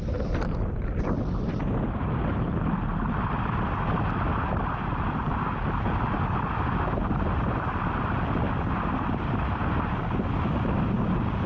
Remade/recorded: recorded